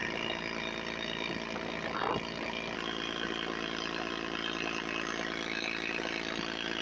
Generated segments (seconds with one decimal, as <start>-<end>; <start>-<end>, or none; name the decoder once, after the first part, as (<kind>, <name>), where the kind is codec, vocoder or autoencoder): none